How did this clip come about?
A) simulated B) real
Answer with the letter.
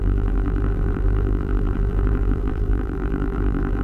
A